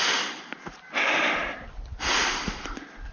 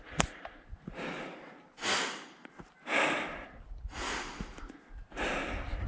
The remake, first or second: first